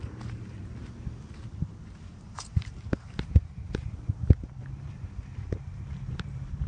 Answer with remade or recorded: remade